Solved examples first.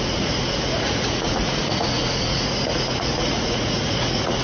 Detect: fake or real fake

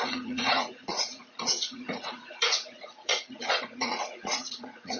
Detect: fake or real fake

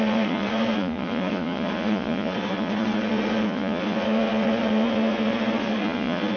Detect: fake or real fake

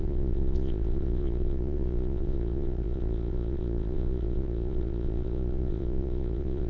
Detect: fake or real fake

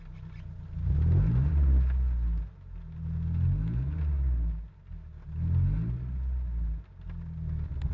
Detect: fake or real real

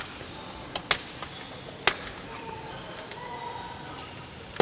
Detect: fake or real real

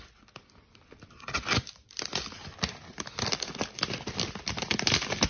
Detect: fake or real real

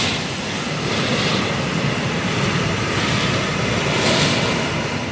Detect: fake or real real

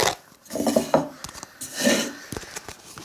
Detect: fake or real real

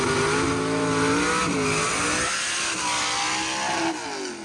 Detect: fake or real real